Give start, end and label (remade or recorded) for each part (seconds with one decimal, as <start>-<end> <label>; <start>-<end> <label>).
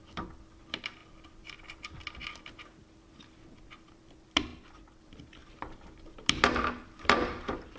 0.0-7.8 remade